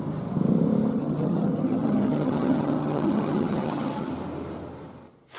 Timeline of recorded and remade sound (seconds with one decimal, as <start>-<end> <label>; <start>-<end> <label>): 0.0-0.9 recorded; 0.9-4.1 remade; 4.1-5.4 recorded